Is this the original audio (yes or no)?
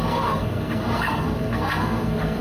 no